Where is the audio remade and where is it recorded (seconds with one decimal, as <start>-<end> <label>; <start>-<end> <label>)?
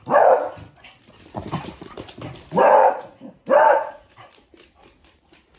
0.0-2.8 recorded; 2.8-3.3 remade; 3.3-3.7 recorded; 3.7-4.4 remade; 4.4-5.6 recorded